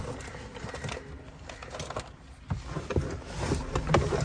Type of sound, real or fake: real